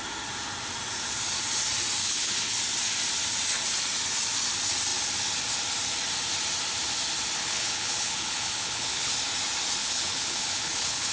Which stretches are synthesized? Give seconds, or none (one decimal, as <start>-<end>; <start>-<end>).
2.0-2.6; 7.4-9.1; 9.8-11.1